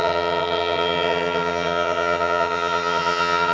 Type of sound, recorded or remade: remade